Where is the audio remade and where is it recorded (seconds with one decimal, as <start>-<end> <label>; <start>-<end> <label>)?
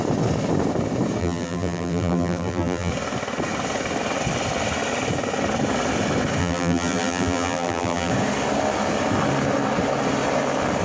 0.0-1.2 recorded; 1.2-2.9 remade; 2.9-6.4 recorded; 6.4-8.1 remade; 8.1-10.8 recorded